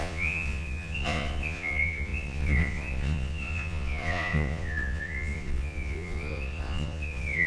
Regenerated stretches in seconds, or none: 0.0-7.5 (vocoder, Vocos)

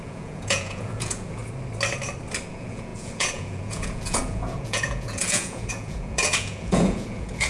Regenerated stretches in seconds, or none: 0.0-1.4 (vocoder, Vocos); 2.5-7.5

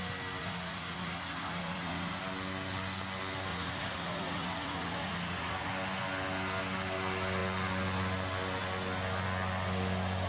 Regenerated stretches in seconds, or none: 0.4-2.2 (vocoder, Vocos); 3.5-5.7

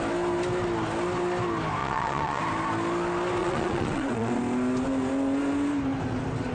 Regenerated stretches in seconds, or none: 1.8-2.4 (vocoder, Vocos); 3.4-4.4

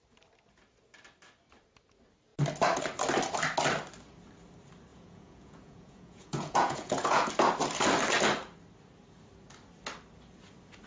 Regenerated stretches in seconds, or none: 4.9-7.3 (vocoder, Vocos)